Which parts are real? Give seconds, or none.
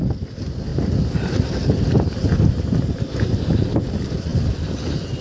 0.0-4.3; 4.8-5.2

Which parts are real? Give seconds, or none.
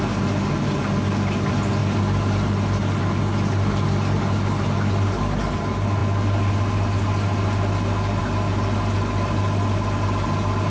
0.0-10.7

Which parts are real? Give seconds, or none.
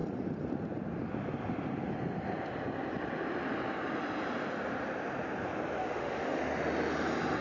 0.0-5.8; 6.4-7.4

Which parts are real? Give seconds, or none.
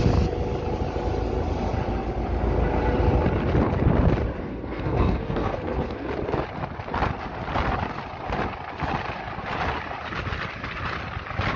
0.0-4.4; 6.1-11.6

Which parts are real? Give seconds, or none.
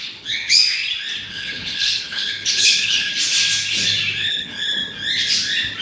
0.6-1.3; 3.1-4.2; 4.8-5.8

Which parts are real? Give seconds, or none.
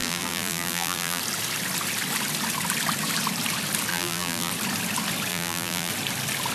1.2-3.9; 4.5-5.3; 5.9-6.5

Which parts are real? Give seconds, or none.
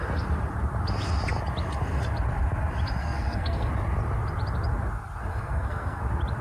0.0-3.0; 3.7-5.3; 6.0-6.4